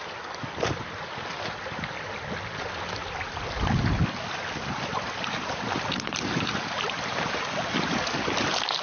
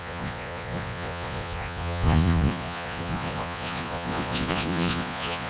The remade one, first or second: second